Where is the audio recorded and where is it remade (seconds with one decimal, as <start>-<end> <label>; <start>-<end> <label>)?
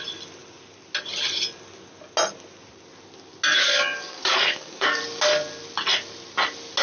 0.0-3.5 recorded; 3.5-5.0 remade; 5.0-6.8 recorded